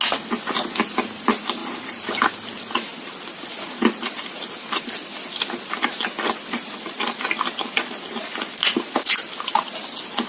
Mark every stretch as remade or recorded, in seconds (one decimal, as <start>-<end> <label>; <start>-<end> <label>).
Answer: 0.0-1.6 recorded; 1.6-2.3 remade; 2.3-10.3 recorded